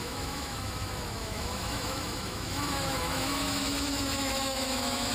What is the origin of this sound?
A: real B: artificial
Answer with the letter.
B